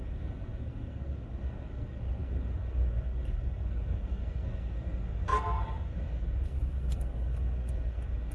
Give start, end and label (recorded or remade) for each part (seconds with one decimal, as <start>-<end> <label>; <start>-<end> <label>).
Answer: 0.0-8.3 remade